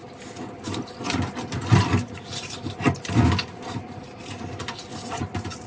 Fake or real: real